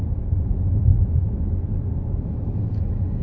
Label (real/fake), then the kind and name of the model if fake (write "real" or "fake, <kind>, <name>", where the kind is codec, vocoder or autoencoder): real